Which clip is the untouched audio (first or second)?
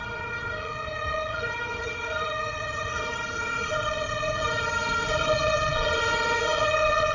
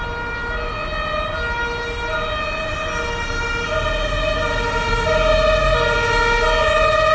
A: second